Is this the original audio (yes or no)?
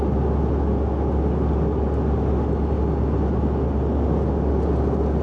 yes